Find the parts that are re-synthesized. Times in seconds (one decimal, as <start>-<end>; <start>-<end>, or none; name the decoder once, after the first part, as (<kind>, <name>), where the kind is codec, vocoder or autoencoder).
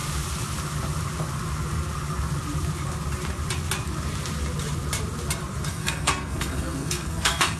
5.7-7.6 (codec, SNAC)